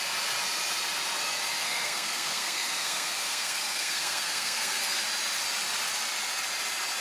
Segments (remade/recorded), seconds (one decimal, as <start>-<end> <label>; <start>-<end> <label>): 0.0-1.6 recorded; 1.6-5.0 remade; 5.0-7.0 recorded